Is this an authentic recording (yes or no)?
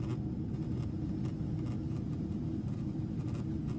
yes